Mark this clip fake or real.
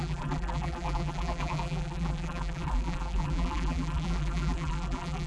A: fake